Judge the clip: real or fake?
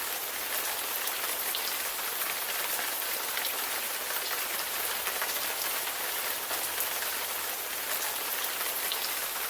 real